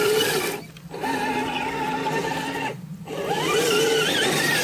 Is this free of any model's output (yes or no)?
yes